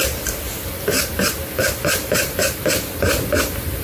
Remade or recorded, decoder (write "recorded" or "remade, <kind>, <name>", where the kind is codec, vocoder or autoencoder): recorded